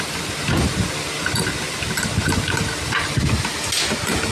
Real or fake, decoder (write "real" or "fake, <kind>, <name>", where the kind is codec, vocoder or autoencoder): real